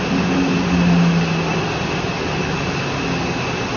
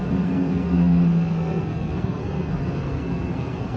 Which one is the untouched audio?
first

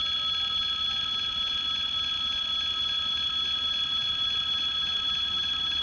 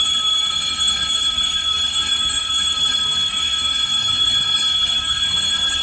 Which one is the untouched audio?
first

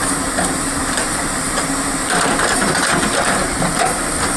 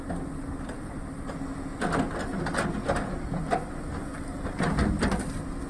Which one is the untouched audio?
second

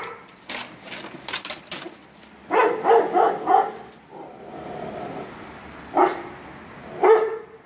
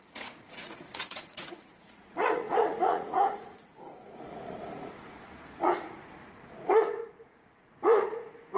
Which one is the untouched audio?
first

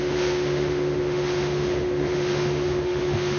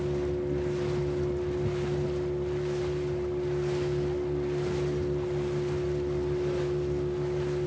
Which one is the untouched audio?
second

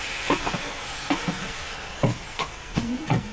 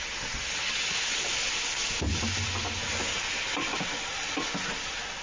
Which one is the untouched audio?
second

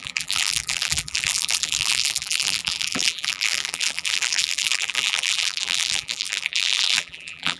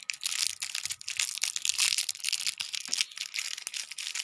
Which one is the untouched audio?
second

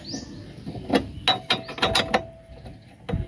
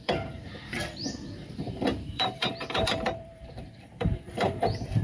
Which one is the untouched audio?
first